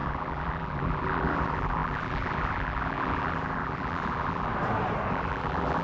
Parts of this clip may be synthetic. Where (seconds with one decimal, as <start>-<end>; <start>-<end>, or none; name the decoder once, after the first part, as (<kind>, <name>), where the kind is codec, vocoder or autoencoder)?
0.0-4.5 (vocoder, BigVGAN v2); 5.1-5.8